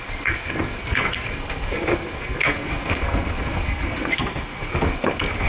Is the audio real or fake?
fake